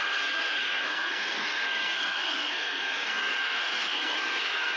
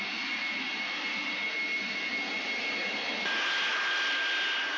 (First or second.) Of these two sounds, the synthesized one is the first